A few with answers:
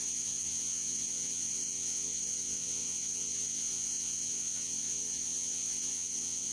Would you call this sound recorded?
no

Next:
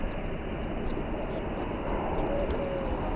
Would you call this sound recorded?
yes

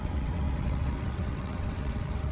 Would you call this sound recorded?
no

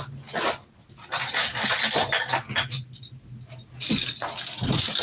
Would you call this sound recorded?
yes